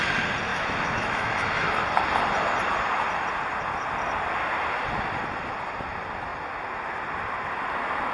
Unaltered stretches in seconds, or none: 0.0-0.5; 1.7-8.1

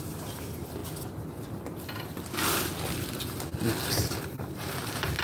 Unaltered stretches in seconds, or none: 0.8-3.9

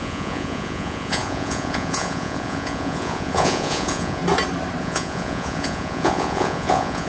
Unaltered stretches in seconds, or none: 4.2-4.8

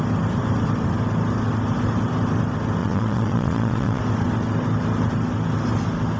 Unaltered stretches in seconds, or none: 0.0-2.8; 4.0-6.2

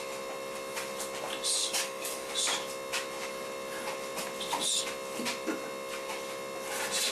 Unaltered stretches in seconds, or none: 0.0-1.6; 2.3-7.1

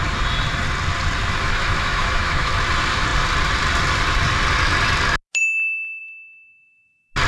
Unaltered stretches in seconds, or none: 0.0-1.4; 2.5-7.3

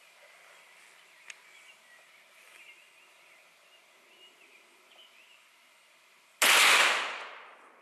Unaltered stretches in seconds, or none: 0.0-7.8

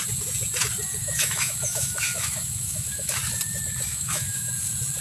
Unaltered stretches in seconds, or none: 0.0-1.0; 3.2-3.9; 4.5-5.0